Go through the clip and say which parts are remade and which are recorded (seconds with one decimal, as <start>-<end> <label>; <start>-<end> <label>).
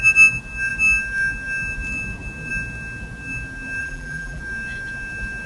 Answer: 0.0-3.8 recorded; 3.8-4.4 remade; 4.4-5.5 recorded